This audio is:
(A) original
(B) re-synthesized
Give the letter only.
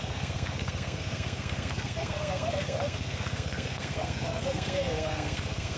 B